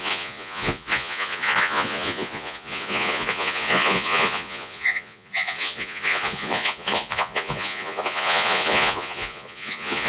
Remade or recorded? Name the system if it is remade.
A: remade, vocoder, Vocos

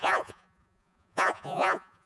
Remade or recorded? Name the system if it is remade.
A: remade, vocoder, Vocos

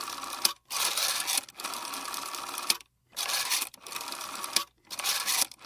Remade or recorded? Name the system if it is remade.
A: recorded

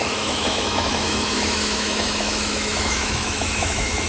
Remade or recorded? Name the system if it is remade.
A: remade, autoencoder, DAC-VAE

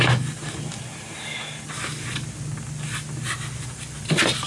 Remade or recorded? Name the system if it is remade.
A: recorded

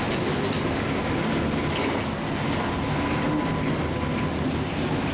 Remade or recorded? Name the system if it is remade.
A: recorded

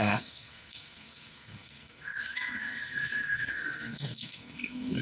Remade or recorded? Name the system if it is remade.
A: remade, codec, SNAC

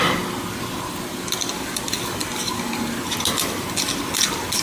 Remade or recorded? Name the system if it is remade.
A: recorded